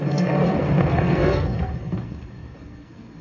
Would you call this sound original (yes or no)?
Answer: no